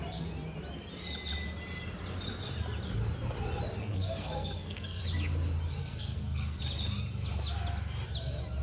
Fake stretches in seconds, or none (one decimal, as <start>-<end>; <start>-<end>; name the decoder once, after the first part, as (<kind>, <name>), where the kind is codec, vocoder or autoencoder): 3.8-5.0 (codec, SNAC); 5.8-6.6